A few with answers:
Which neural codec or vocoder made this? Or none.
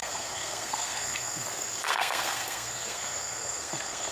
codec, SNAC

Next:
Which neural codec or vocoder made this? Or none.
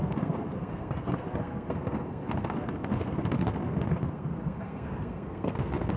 codec, SNAC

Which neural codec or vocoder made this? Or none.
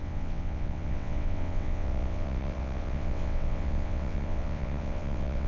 vocoder, WaveNeXt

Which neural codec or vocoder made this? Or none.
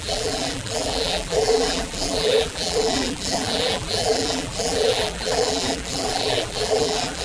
vocoder, BigVGAN v2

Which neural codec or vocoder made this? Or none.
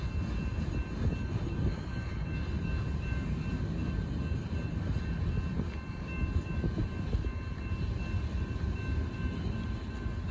none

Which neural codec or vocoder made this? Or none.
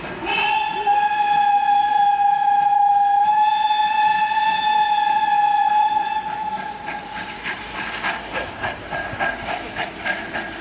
none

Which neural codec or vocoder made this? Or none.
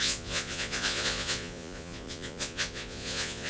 vocoder, Vocos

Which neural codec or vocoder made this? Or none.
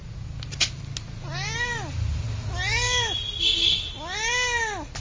none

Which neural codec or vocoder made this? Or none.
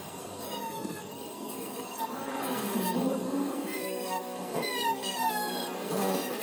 codec, SNAC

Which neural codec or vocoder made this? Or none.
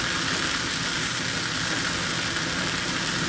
none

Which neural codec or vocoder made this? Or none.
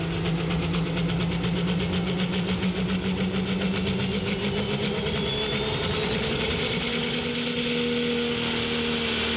none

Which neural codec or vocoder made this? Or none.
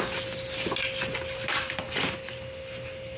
none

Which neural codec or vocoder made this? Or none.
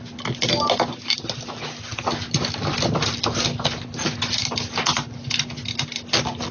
none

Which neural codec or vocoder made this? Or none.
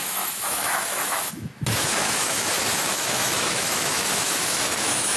autoencoder, DAC-VAE